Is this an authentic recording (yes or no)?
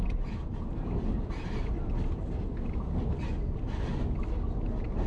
yes